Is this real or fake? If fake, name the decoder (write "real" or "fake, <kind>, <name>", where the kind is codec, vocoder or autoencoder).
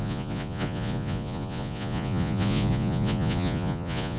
fake, vocoder, Vocos